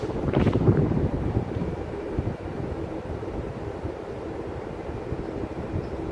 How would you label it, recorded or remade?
remade